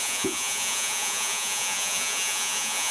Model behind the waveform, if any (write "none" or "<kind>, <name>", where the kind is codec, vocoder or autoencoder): vocoder, Vocos